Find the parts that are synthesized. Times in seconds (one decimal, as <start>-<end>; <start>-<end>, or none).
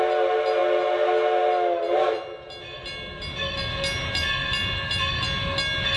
none